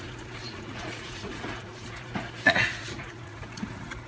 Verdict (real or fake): fake